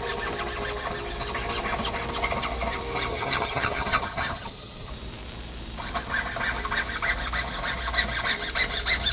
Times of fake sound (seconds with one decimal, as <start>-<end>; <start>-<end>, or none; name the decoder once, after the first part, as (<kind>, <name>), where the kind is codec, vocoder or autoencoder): 3.1-4.9 (vocoder, HiFi-GAN)